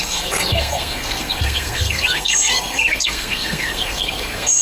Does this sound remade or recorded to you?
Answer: remade